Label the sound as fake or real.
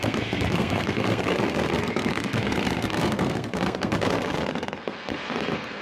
fake